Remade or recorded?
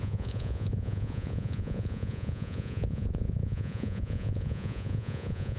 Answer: remade